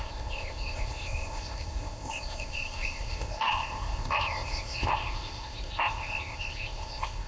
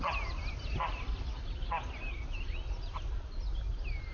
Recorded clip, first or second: second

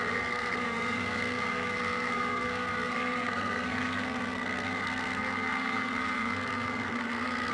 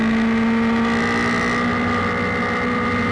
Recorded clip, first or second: second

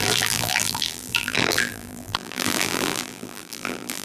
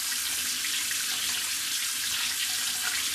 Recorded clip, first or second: second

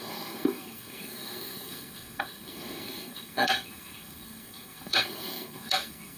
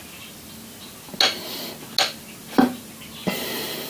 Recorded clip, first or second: second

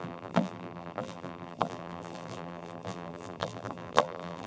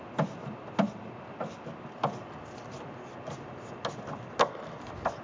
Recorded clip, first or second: second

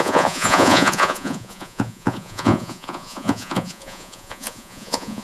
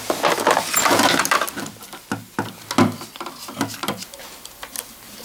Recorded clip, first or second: second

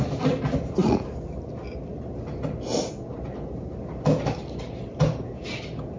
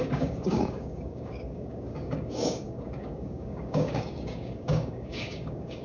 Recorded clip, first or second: first